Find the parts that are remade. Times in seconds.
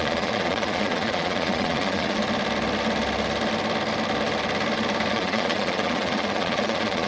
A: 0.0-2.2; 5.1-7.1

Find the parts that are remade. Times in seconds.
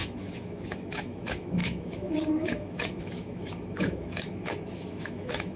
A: 0.0-5.6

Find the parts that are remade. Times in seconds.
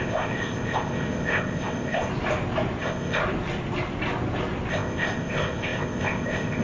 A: 0.0-2.1; 2.8-3.2; 4.7-6.6